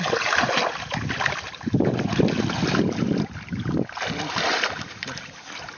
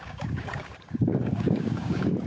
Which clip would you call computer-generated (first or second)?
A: second